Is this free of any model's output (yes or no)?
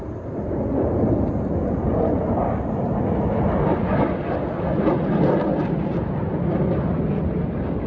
yes